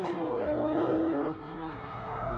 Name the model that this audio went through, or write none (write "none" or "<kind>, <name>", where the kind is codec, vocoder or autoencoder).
codec, SNAC